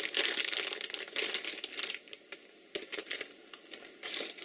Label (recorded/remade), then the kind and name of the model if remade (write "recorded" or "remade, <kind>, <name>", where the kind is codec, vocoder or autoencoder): recorded